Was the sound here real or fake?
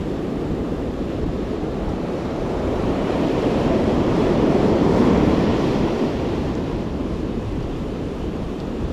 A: fake